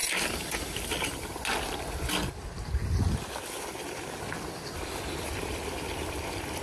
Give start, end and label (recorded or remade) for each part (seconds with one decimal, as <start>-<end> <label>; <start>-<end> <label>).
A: 0.0-6.6 recorded